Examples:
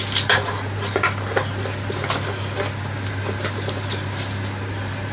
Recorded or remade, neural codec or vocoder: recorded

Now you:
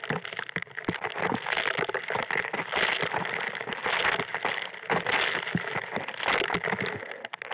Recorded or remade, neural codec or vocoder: recorded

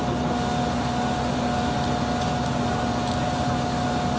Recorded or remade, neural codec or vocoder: recorded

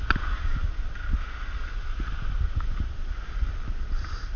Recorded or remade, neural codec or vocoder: recorded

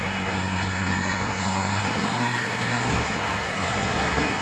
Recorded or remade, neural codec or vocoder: remade, codec, SNAC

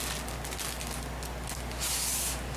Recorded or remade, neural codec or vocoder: recorded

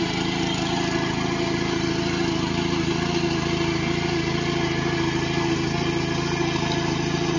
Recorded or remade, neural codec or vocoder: recorded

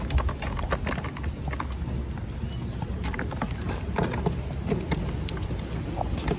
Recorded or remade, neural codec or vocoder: recorded